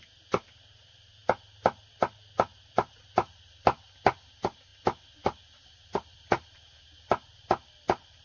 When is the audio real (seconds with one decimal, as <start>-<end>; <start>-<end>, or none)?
0.0-8.2